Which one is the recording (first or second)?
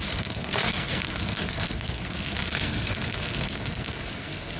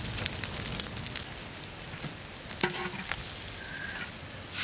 second